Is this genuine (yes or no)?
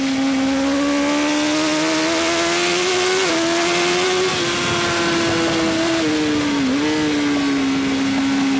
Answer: yes